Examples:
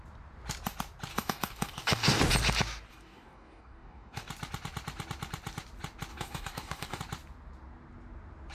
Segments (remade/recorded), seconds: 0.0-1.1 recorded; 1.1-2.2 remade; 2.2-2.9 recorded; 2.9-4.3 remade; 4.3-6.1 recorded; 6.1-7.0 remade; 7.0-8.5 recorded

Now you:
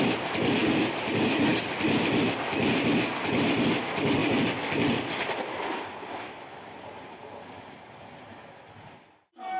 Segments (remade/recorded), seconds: 0.0-9.6 recorded

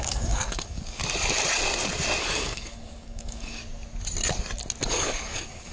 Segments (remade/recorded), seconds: 0.0-1.0 remade; 1.0-2.2 recorded; 2.2-3.6 remade; 3.6-4.9 recorded; 4.9-5.7 remade

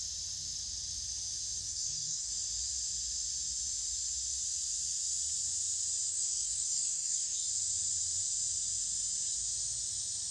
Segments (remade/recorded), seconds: 0.0-1.6 recorded; 1.6-2.3 remade; 2.3-6.1 recorded; 6.1-7.5 remade; 7.5-10.3 recorded

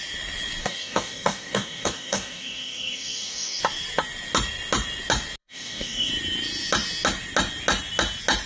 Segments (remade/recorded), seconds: 0.0-0.6 recorded; 0.6-3.6 remade; 3.6-5.4 recorded; 5.4-6.1 remade; 6.1-8.5 recorded

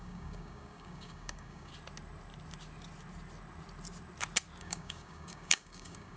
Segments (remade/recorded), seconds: 0.0-1.7 remade; 1.7-4.6 recorded; 4.6-6.2 remade